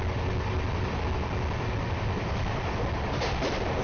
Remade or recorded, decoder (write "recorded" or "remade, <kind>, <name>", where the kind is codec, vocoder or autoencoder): recorded